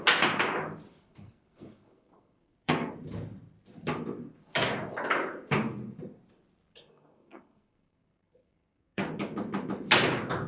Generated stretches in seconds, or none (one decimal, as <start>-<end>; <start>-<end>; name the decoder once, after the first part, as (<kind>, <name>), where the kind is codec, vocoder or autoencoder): 0.9-2.9 (codec, SNAC); 6.9-9.0